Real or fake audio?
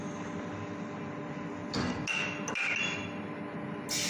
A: real